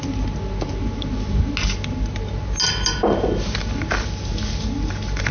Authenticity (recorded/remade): recorded